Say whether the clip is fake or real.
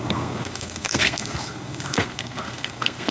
fake